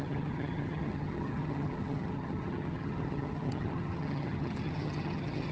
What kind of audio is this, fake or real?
fake